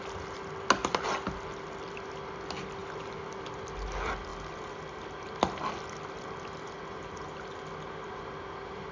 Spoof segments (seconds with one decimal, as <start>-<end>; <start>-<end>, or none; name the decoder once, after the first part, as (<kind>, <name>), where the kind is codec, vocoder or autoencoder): none